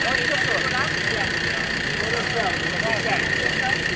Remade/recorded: recorded